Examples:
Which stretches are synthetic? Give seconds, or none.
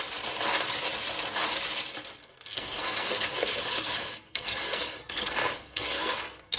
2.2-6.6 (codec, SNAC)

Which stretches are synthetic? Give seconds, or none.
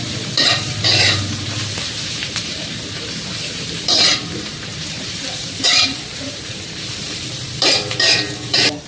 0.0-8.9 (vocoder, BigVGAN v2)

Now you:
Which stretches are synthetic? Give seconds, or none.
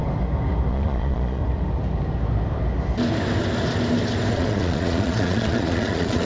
0.7-1.4 (vocoder, Vocos); 4.3-6.3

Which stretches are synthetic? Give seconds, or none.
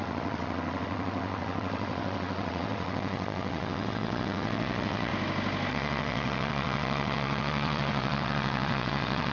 0.0-5.1 (vocoder, WaveNeXt); 5.7-9.3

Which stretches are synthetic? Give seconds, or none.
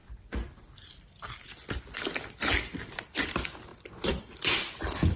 0.0-5.2 (vocoder, BigVGAN v2)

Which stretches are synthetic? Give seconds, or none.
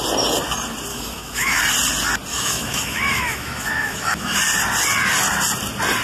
0.9-1.6 (autoencoder, DAC-VAE); 2.3-4.4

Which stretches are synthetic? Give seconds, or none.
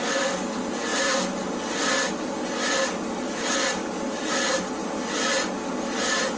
none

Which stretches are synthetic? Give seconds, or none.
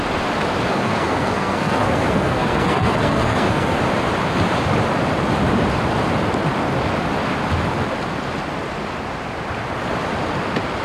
0.7-3.8 (codec, SNAC)